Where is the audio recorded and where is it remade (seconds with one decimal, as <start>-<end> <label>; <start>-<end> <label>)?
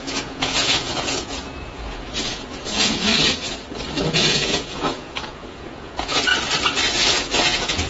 0.0-3.1 remade; 3.1-4.1 recorded; 4.1-6.3 remade; 6.3-6.9 recorded; 6.9-7.9 remade